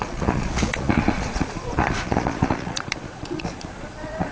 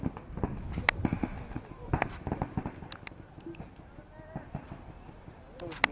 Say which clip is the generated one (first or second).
first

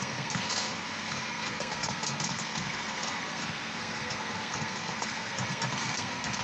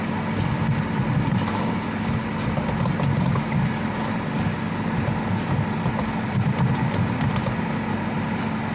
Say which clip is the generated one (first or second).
first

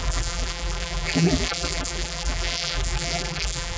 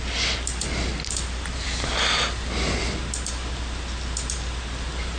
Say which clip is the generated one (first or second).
first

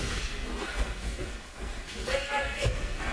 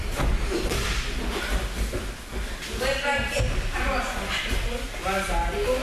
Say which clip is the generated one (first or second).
first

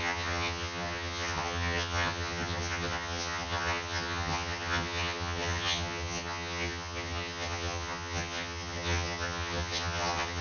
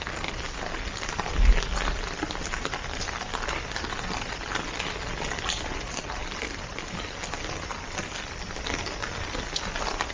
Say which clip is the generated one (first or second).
first